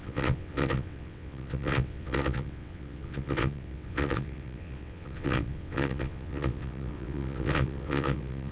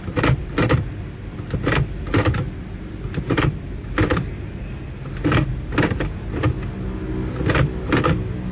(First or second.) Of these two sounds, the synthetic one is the first